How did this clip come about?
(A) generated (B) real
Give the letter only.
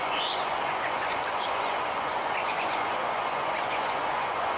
A